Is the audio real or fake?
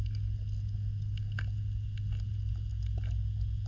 real